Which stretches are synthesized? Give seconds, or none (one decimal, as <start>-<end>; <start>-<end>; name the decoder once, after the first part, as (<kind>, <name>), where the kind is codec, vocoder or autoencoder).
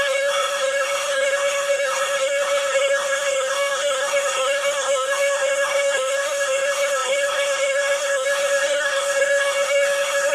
0.0-10.3 (codec, SNAC)